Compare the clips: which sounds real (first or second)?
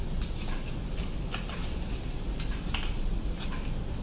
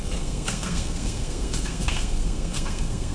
first